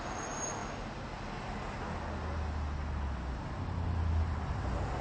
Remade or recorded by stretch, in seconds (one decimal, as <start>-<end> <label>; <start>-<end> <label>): 0.0-5.0 recorded